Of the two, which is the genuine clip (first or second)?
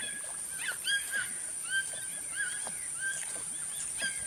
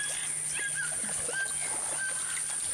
second